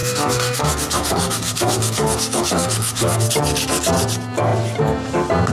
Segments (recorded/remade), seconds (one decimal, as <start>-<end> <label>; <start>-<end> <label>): 0.0-3.3 remade; 3.3-5.5 recorded